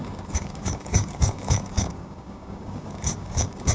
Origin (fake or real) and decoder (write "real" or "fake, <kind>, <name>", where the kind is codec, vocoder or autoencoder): fake, codec, DAC